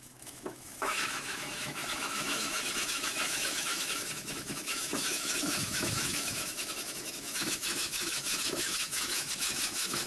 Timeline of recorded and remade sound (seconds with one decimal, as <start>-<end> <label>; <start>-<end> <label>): 0.0-10.1 remade